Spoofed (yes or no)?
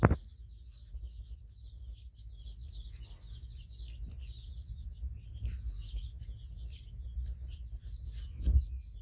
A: no